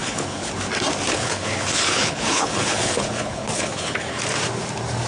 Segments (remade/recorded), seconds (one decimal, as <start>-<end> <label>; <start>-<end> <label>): 0.0-0.5 remade; 0.5-1.1 recorded; 1.1-4.2 remade; 4.2-5.1 recorded